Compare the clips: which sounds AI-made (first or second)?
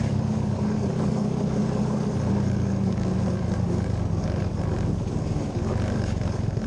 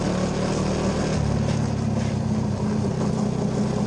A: first